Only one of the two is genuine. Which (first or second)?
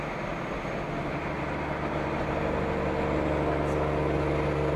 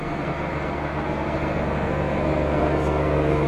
first